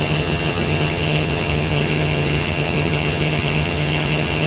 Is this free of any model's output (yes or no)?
no